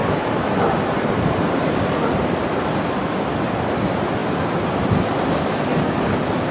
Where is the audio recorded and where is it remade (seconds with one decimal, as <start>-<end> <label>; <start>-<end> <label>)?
0.0-2.8 remade; 2.8-6.5 recorded